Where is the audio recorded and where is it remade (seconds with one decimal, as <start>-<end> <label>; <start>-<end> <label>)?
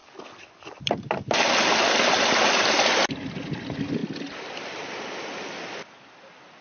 0.0-2.8 remade; 2.8-6.6 recorded